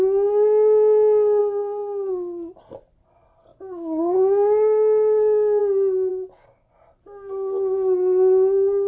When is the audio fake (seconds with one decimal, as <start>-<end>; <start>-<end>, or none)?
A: 1.4-2.1; 3.5-5.6; 6.1-6.7